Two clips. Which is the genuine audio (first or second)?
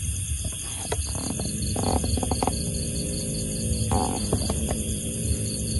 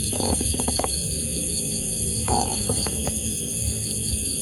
first